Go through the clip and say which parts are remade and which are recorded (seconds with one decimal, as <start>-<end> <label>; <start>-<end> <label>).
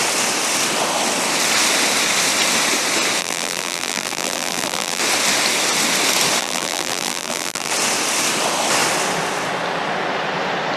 0.0-3.2 recorded; 3.2-5.0 remade; 5.0-6.4 recorded; 6.4-7.7 remade; 7.7-10.8 recorded